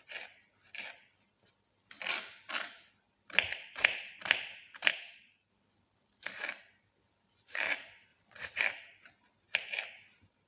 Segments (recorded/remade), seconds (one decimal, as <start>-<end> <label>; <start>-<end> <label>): 0.0-3.5 recorded; 3.5-4.1 remade; 4.1-4.9 recorded; 4.9-5.5 remade; 5.5-8.1 recorded; 8.1-8.6 remade; 8.6-10.5 recorded